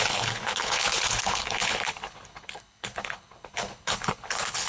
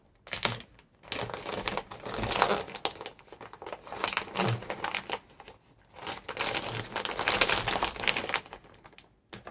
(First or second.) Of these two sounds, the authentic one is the second